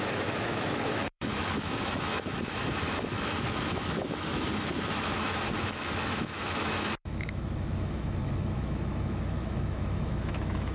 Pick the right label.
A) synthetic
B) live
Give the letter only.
A